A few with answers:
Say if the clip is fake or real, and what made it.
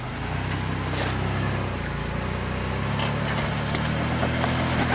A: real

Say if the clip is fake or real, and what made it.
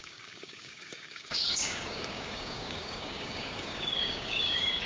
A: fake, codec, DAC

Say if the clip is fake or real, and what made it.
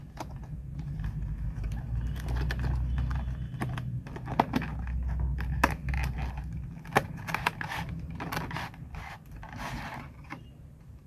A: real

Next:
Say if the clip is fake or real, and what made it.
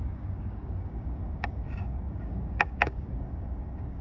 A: fake, codec, DAC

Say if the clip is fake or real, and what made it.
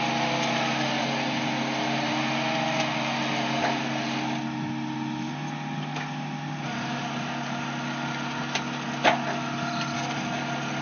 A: real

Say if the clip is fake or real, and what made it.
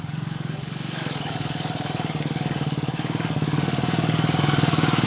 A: fake, codec, DAC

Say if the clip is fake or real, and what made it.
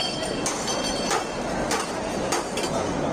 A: real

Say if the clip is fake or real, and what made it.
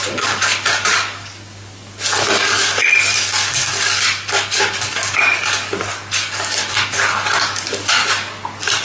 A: fake, codec, DAC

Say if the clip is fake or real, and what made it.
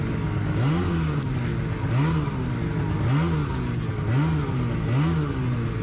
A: real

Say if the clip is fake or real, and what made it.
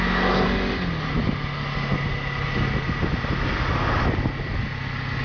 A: real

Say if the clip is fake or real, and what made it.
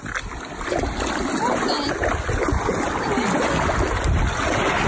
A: real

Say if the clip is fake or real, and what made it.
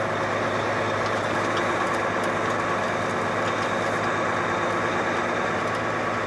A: real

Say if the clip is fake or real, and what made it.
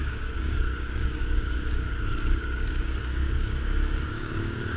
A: fake, codec, DAC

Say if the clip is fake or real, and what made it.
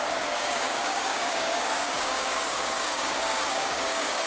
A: fake, codec, DAC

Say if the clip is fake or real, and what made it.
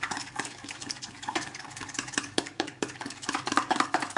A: fake, codec, DAC